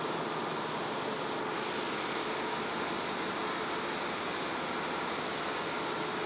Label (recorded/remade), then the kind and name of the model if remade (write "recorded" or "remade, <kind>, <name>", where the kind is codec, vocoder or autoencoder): recorded